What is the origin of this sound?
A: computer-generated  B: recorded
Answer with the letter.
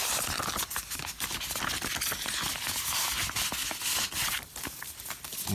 B